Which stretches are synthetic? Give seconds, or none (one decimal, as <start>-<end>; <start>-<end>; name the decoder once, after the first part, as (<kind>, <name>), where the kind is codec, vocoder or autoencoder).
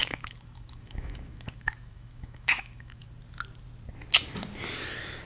0.0-3.1 (autoencoder, DAC-VAE)